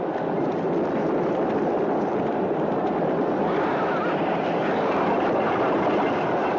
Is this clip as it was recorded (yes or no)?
no